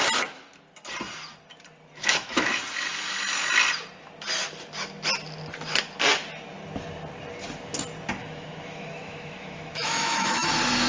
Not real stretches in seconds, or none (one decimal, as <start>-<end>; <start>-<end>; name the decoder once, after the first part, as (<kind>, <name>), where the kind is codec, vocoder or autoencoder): 2.0-2.6 (autoencoder, DAC-VAE); 8.2-10.5